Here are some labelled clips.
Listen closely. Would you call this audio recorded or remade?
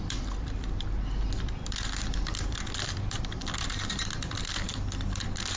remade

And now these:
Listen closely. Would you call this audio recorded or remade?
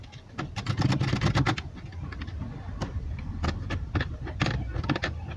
recorded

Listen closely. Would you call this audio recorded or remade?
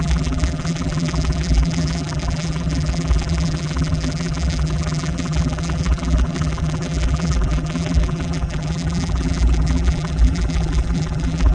remade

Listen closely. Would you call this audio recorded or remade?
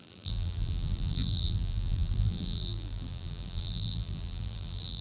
remade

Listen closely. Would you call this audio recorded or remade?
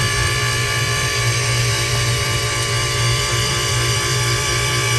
remade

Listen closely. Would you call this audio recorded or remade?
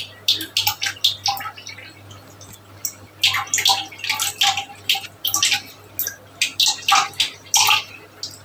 recorded